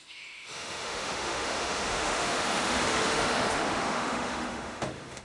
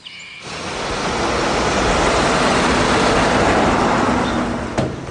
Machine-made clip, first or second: first